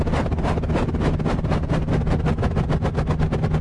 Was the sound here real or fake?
real